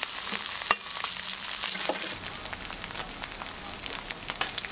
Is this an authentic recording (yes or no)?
yes